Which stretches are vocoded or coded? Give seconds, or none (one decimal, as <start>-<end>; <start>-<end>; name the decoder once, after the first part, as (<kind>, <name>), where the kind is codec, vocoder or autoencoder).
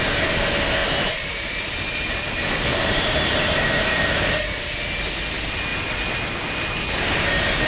0.8-1.5 (vocoder, BigVGAN v2); 2.7-3.6